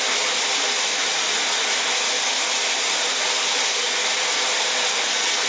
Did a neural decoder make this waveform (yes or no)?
no